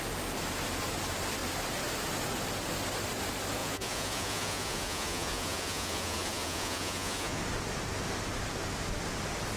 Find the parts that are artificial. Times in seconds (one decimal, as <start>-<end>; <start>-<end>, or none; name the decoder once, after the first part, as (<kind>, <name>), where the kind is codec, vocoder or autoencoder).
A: 3.6-7.4 (vocoder, Vocos)